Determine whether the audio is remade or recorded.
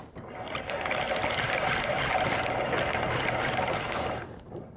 recorded